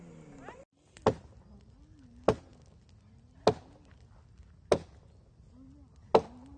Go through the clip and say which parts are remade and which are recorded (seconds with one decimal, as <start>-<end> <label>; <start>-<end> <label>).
0.0-6.6 recorded